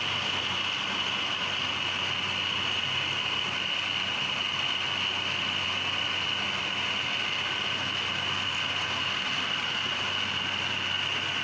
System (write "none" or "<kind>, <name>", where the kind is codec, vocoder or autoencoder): none